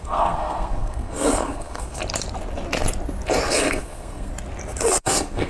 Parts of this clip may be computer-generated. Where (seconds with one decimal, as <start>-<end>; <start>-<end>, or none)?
0.0-2.0; 3.5-4.3; 5.0-5.5